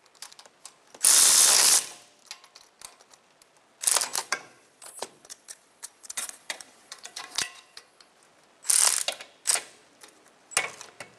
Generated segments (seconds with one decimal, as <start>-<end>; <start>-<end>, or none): 4.2-8.1